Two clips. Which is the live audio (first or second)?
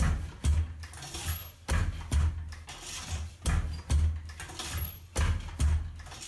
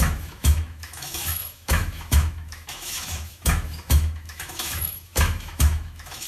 first